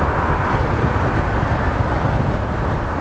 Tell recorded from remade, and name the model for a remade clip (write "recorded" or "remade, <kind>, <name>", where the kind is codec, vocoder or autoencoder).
recorded